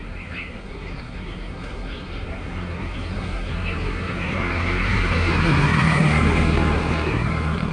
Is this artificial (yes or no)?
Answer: yes